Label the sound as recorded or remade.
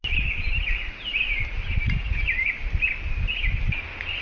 recorded